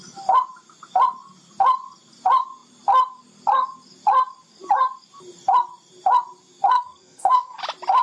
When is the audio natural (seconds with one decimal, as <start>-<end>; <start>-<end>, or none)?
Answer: 0.0-6.7; 7.6-8.0